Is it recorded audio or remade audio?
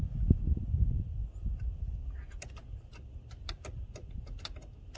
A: recorded